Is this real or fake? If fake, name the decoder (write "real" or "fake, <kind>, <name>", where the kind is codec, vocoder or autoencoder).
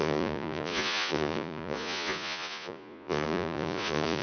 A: fake, vocoder, Vocos